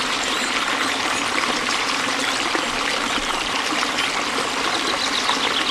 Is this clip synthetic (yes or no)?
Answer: no